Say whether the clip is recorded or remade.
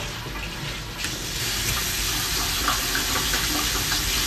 recorded